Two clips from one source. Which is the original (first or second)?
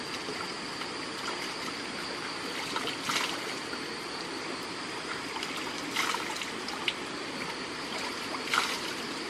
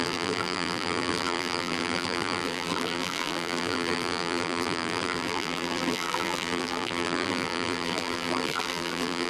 first